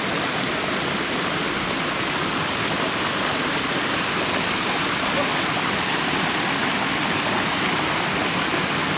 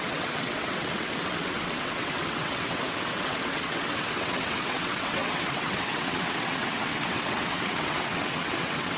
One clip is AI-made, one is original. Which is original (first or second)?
first